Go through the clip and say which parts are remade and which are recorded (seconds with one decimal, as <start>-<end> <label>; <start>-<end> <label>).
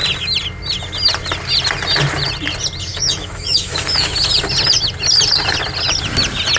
0.0-2.9 recorded; 2.9-4.1 remade; 4.1-6.6 recorded